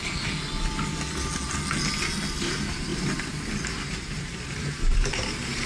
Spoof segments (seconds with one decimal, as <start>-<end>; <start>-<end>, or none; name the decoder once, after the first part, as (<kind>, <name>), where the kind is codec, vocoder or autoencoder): 2.3-5.7 (vocoder, BigVGAN v2)